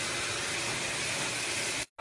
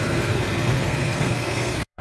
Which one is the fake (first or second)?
second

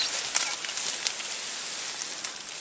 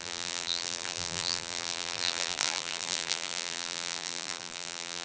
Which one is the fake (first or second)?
second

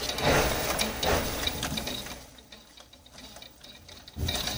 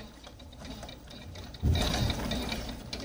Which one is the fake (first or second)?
second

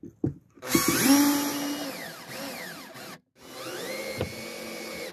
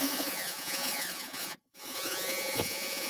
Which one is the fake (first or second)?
second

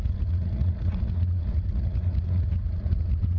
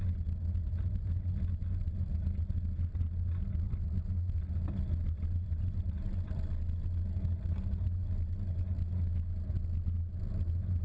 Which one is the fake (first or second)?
first